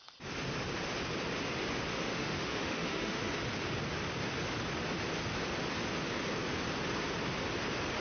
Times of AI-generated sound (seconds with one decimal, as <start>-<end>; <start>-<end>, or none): 1.9-3.3